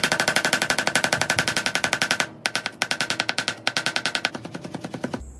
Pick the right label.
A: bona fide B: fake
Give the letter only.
A